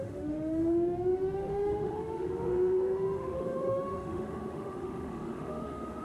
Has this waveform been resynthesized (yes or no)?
yes